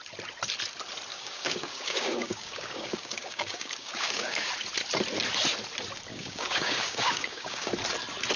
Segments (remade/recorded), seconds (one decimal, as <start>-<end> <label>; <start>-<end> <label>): 0.0-1.1 recorded; 1.1-4.5 remade; 4.5-6.1 recorded; 6.1-7.7 remade; 7.7-8.4 recorded